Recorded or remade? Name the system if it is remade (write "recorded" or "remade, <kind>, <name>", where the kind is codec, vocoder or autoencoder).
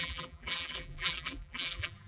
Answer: remade, vocoder, BigVGAN v2